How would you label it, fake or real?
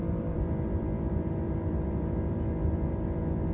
fake